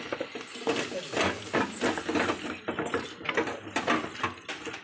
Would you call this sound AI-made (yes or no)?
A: no